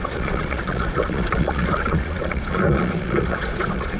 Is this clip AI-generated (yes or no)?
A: yes